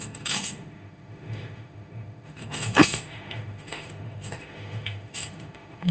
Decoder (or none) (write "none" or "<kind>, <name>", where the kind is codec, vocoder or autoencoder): autoencoder, DAC-VAE